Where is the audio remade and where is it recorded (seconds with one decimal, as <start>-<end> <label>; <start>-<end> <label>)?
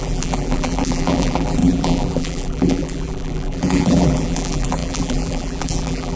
0.0-6.2 remade